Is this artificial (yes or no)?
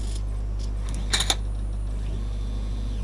no